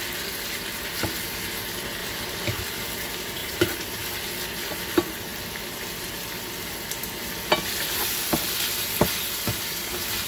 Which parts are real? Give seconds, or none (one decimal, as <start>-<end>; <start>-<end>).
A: 0.0-2.0; 2.6-3.4; 4.0-9.8